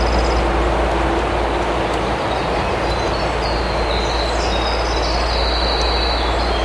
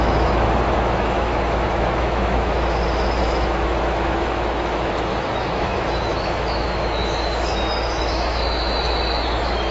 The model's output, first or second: second